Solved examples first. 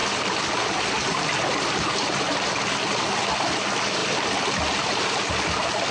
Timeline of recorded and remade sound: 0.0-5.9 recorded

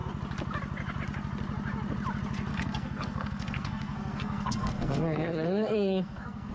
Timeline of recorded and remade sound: 0.0-2.5 recorded; 2.5-6.5 remade